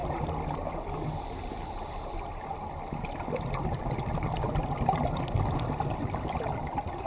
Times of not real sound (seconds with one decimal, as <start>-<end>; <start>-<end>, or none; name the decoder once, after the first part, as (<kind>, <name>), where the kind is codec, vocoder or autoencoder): none